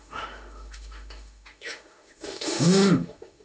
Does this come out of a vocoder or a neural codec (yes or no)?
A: yes